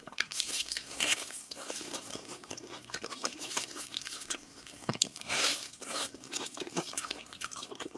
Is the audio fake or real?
fake